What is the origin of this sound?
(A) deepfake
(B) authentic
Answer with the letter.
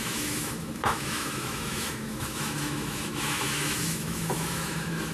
A